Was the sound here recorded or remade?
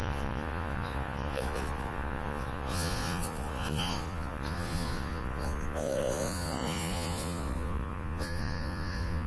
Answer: remade